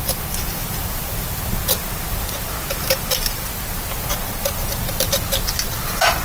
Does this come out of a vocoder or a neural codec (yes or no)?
no